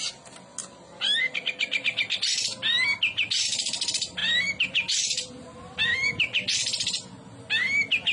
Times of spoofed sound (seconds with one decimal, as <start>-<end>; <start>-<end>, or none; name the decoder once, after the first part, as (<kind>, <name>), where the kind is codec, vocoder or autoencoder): none